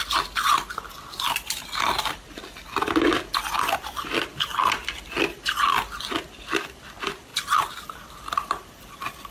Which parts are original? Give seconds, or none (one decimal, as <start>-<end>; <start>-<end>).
0.0-9.3